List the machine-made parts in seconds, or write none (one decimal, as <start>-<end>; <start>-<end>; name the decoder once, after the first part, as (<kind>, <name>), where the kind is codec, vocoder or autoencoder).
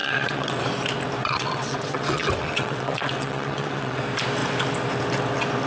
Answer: 0.0-0.6 (vocoder, WaveNeXt); 1.2-4.0